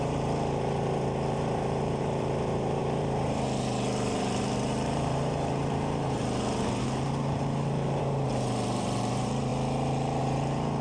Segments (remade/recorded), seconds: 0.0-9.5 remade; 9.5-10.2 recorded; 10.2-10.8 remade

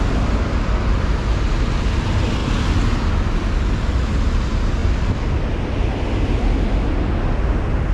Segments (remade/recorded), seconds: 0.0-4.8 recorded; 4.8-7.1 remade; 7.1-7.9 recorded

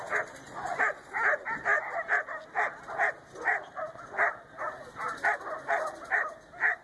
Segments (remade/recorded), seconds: 0.0-6.8 recorded